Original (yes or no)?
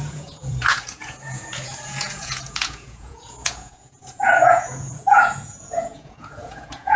no